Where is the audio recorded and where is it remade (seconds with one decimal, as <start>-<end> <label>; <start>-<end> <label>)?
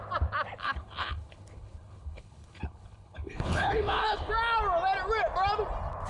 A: 0.0-0.6 recorded; 0.6-4.3 remade; 4.3-6.1 recorded